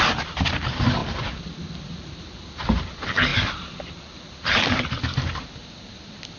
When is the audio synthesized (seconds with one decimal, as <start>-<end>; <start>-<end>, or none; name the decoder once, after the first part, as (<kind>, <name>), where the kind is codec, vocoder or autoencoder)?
none